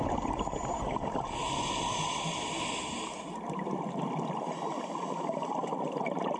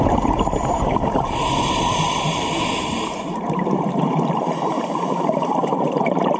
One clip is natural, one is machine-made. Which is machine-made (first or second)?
second